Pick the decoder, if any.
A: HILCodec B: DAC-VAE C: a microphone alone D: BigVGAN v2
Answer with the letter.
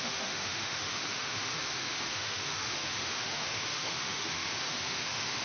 B